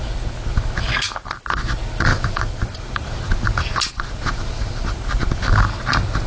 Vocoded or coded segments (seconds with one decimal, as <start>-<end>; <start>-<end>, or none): 2.1-5.4